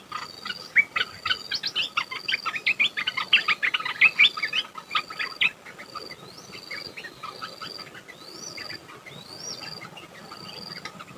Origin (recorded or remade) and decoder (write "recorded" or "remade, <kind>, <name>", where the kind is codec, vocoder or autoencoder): recorded